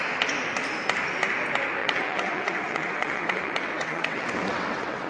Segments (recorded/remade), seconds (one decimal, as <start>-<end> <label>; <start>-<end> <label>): 0.0-1.8 recorded; 1.8-5.1 remade